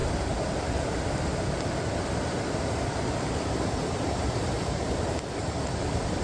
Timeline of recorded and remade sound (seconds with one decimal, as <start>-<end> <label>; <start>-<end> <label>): 0.0-3.7 recorded; 3.7-6.2 remade

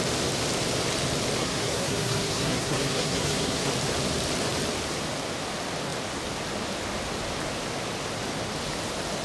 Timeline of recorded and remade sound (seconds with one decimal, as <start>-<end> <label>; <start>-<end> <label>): 0.0-1.4 recorded; 1.4-3.7 remade; 3.7-9.2 recorded

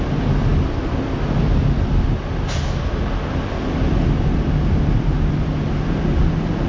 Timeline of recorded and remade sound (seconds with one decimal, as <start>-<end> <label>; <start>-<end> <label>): 0.0-6.7 recorded

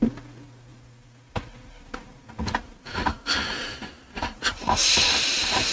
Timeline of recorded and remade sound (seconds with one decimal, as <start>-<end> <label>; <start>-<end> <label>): 0.0-5.7 recorded

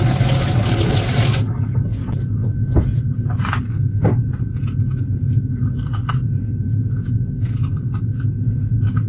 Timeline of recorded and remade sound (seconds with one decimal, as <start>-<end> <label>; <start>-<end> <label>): 0.0-3.9 recorded; 3.9-6.5 remade; 6.5-9.1 recorded